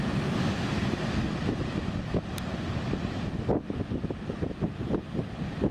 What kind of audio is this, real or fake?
real